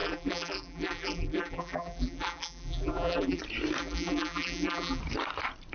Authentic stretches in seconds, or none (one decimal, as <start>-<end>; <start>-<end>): 3.4-3.8; 5.0-5.7